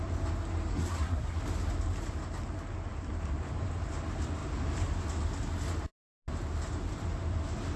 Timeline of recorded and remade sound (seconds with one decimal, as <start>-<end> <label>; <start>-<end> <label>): 0.0-0.7 recorded; 0.7-1.4 remade; 1.4-7.8 recorded